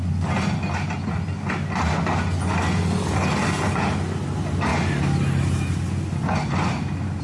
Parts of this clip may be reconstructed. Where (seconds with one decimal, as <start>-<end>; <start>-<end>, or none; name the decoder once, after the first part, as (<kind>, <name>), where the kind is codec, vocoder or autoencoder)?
none